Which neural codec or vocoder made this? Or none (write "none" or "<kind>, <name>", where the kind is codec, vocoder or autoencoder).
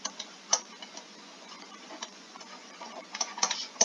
vocoder, Vocos